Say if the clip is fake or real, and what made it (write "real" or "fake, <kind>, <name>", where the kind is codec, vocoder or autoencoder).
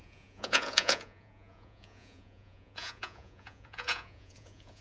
fake, vocoder, Vocos